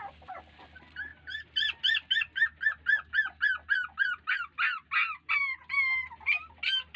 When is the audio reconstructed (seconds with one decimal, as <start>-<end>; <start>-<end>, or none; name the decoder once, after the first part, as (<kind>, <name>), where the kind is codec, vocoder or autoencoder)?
none